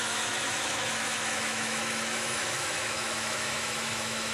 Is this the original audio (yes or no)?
no